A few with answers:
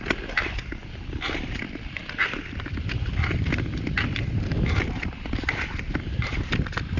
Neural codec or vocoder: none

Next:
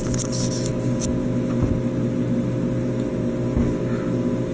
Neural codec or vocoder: none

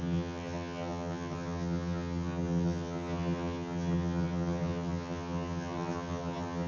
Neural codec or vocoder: vocoder, HiFi-GAN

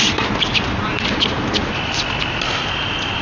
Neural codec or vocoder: none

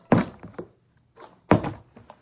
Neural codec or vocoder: none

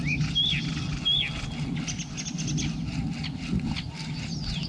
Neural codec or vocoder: none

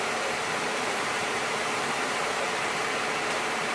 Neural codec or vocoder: vocoder, BigVGAN v2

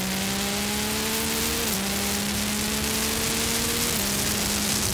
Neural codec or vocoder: none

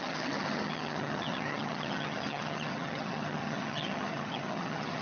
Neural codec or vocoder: vocoder, HiFi-GAN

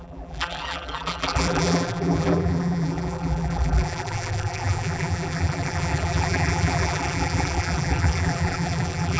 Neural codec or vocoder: vocoder, BigVGAN v2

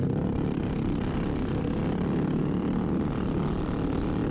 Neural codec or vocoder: none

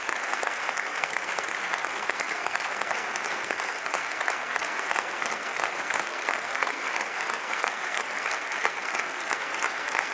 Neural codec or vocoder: codec, SNAC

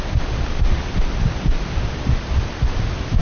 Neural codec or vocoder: none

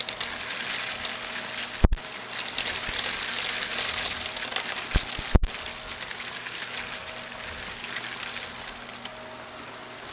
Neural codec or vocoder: none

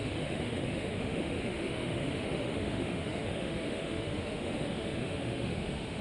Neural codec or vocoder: autoencoder, DAC-VAE